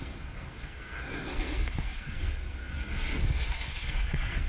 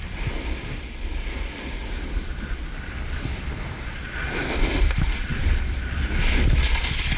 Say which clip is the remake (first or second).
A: first